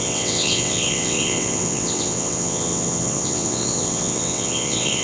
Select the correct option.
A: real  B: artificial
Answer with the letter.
B